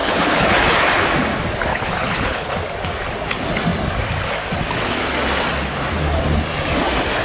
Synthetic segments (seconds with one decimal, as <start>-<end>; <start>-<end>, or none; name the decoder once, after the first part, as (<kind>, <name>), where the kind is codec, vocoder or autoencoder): 0.0-0.6 (codec, HILCodec); 1.7-2.5